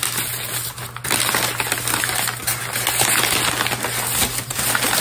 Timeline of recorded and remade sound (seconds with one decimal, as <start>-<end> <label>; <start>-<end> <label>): 0.0-5.0 recorded